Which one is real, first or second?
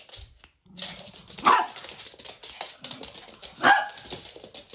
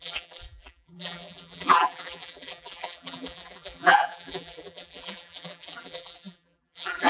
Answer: first